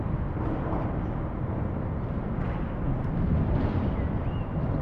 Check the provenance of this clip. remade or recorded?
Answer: recorded